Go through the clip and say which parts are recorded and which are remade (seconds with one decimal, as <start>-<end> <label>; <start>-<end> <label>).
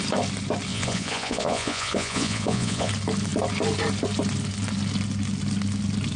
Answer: 0.0-0.7 recorded; 0.7-2.9 remade; 2.9-6.2 recorded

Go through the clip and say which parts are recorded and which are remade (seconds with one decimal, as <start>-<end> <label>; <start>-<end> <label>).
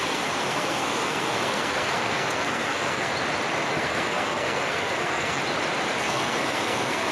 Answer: 0.0-3.1 remade; 3.1-3.7 recorded; 3.7-5.4 remade; 5.4-6.0 recorded; 6.0-7.1 remade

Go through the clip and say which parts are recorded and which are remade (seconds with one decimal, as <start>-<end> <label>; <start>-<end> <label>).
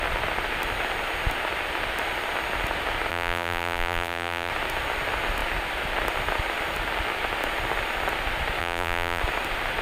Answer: 0.0-3.1 recorded; 3.1-4.5 remade; 4.5-8.6 recorded; 8.6-9.2 remade; 9.2-9.8 recorded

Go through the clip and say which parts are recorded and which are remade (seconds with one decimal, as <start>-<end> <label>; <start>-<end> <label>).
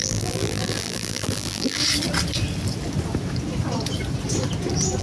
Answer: 0.0-1.8 remade; 1.8-5.0 recorded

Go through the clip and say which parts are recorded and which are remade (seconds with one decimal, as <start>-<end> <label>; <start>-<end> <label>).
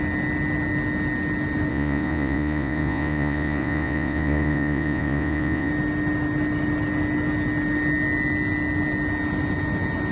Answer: 0.0-1.7 recorded; 1.7-5.7 remade; 5.7-10.1 recorded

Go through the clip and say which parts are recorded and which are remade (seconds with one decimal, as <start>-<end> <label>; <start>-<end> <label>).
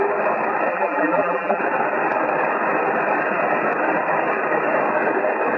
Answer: 0.0-0.7 recorded; 0.7-1.6 remade; 1.6-5.6 recorded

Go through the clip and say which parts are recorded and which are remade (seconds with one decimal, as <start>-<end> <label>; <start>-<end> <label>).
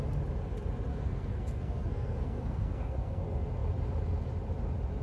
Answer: 0.0-0.9 recorded; 0.9-3.2 remade; 3.2-5.0 recorded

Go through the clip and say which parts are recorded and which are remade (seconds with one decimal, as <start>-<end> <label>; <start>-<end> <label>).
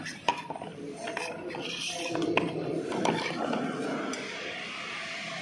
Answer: 0.0-0.7 recorded; 0.7-3.6 remade; 3.6-5.4 recorded